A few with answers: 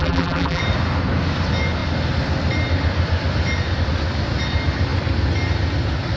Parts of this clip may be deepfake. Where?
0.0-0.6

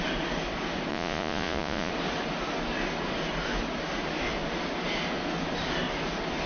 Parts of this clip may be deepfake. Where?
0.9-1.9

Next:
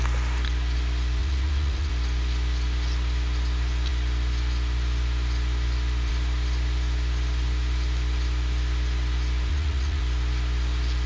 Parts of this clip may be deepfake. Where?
1.2-1.9; 9.5-10.0

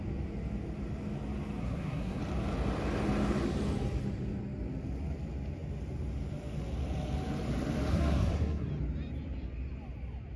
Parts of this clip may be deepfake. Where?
1.6-2.2; 7.9-8.7